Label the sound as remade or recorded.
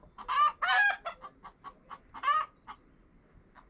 recorded